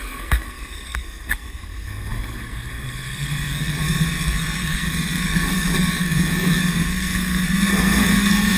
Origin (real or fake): fake